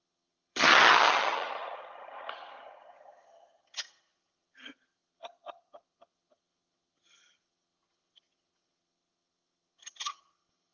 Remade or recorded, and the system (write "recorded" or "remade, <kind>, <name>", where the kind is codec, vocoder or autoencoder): remade, vocoder, HiFi-GAN